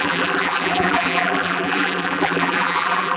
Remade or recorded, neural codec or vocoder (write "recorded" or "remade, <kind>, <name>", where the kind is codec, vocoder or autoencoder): remade, vocoder, BigVGAN v2